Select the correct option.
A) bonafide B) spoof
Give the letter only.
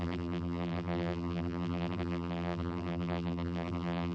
B